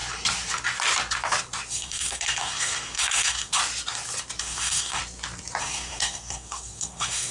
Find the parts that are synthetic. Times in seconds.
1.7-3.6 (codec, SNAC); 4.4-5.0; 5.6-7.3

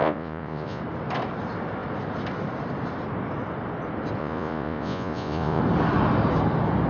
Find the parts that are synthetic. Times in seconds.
0.0-0.8 (vocoder, Vocos); 4.2-5.6

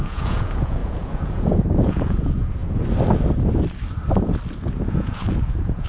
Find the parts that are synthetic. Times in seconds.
0.0-2.6 (vocoder, Vocos); 4.7-5.9

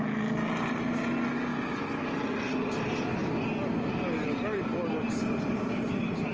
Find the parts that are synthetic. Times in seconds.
none

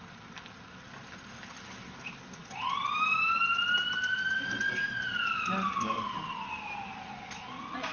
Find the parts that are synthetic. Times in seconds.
none

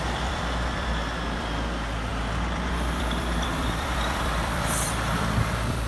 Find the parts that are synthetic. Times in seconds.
0.0-5.9 (vocoder, BigVGAN v2)

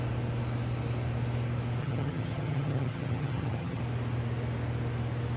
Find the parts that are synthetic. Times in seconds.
1.8-3.8 (vocoder, HiFi-GAN)

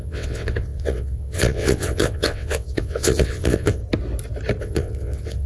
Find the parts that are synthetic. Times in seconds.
0.0-3.8 (vocoder, WaveNeXt); 4.6-5.5